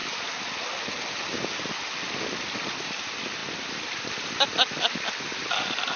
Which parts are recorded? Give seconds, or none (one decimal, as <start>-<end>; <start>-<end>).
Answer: 0.0-2.4